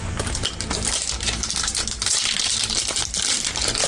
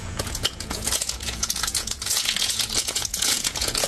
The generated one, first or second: second